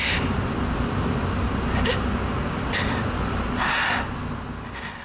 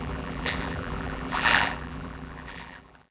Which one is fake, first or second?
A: second